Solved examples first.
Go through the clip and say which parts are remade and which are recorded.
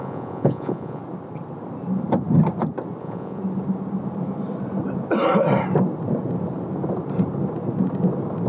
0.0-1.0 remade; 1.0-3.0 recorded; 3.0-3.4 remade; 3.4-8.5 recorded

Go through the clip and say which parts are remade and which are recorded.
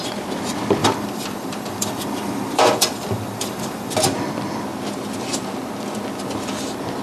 0.0-0.8 recorded; 0.8-3.9 remade; 3.9-7.0 recorded